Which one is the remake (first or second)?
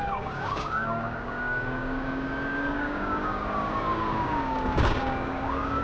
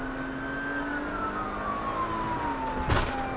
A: first